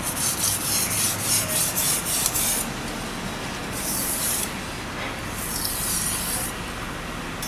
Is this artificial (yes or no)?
no